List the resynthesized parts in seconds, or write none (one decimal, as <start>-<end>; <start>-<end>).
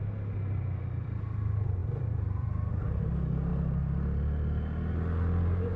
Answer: none